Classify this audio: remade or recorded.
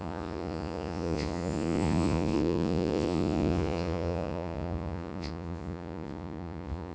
remade